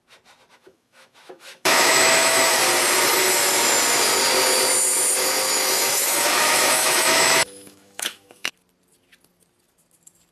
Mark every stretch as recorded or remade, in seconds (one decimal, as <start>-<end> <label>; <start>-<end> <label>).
0.0-0.5 recorded; 0.5-2.6 remade; 2.6-5.5 recorded; 5.5-8.5 remade; 8.5-10.3 recorded